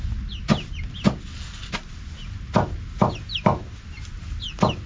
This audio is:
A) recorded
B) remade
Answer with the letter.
A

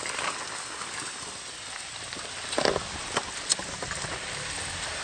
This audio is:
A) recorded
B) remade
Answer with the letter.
A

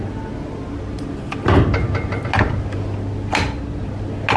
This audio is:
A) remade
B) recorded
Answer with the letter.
B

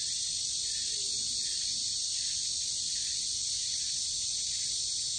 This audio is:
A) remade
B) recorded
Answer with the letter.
B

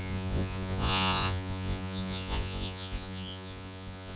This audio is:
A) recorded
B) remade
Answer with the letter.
B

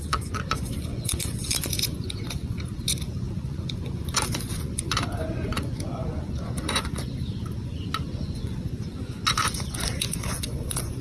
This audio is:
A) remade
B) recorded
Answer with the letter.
A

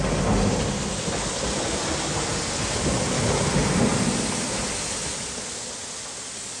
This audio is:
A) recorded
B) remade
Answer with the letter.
A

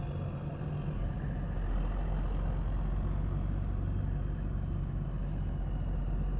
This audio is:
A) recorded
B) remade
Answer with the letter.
A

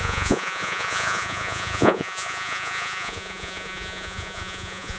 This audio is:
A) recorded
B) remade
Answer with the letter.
B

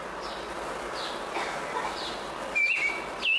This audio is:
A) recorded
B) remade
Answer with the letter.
A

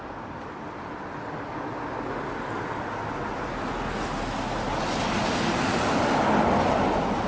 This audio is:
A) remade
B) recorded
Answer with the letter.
B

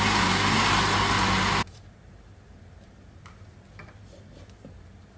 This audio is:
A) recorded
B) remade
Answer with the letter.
A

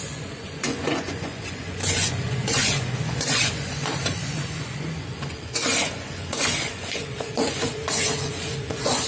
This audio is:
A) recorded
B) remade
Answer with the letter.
B